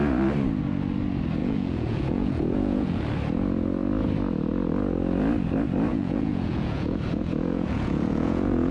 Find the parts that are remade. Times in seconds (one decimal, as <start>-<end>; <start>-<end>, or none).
1.4-3.0; 5.9-8.7